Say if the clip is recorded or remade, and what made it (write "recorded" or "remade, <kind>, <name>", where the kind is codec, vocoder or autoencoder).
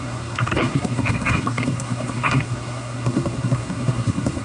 remade, codec, SNAC